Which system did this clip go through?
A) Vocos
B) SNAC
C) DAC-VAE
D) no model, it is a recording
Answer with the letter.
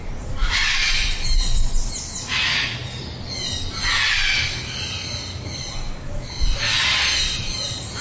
D